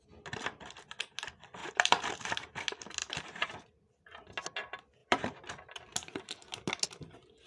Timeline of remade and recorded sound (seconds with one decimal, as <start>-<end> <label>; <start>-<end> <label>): 0.0-1.6 recorded; 1.6-2.6 remade; 2.6-3.0 recorded; 3.0-3.8 remade; 3.8-5.0 recorded; 5.0-5.5 remade; 5.5-7.5 recorded